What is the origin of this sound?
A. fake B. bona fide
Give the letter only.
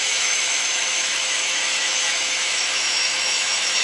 A